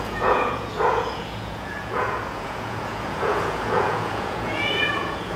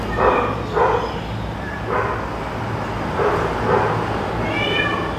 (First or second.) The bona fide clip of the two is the second